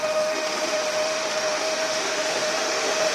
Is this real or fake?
fake